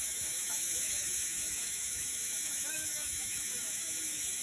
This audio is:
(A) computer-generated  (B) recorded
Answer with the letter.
A